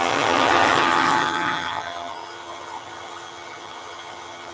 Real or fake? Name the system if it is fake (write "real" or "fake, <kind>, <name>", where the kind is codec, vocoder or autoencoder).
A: fake, vocoder, HiFi-GAN